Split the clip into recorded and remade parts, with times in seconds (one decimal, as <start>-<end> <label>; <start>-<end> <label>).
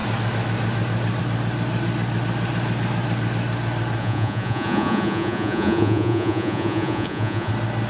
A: 0.0-4.0 recorded; 4.0-7.5 remade; 7.5-7.9 recorded